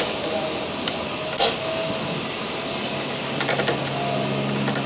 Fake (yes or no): no